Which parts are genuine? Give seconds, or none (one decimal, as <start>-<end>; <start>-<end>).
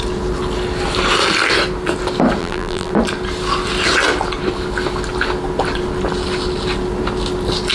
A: 0.0-2.4; 2.9-7.7